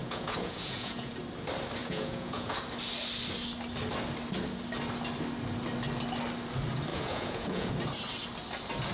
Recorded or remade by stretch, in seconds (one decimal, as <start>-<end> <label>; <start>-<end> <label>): 0.0-1.1 remade; 1.1-1.8 recorded; 1.8-2.6 remade; 2.6-6.9 recorded; 6.9-7.7 remade; 7.7-8.9 recorded